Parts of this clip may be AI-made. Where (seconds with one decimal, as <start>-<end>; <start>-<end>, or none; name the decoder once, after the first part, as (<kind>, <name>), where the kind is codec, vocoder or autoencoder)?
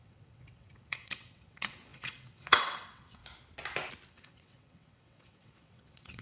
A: 0.0-3.2 (vocoder, WaveNeXt); 4.1-6.2